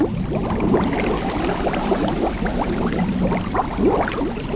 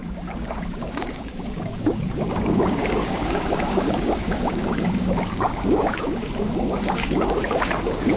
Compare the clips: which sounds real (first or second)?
first